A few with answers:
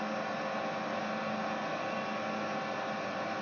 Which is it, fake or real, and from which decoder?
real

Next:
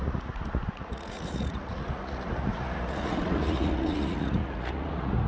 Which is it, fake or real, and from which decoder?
fake, vocoder, Vocos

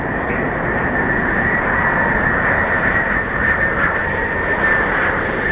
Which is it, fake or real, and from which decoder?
fake, vocoder, BigVGAN v2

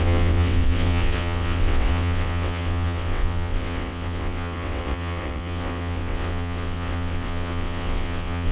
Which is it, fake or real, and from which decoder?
fake, vocoder, WaveNeXt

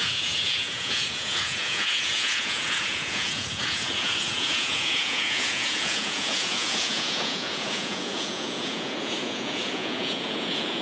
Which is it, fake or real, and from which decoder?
fake, vocoder, Vocos